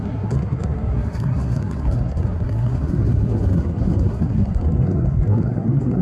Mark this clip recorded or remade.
remade